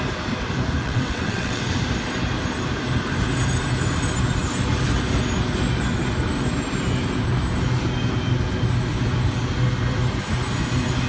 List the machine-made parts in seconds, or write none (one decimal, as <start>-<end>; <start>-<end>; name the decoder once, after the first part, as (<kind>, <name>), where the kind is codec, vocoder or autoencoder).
0.8-1.6 (vocoder, WaveNeXt)